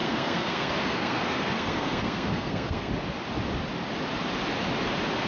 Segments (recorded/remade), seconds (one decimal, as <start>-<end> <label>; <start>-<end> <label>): 0.0-2.9 remade; 2.9-5.3 recorded